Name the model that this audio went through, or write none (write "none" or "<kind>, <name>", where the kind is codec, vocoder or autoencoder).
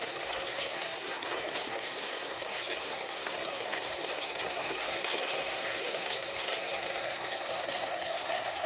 codec, SNAC